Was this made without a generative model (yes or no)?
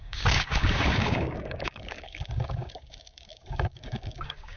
no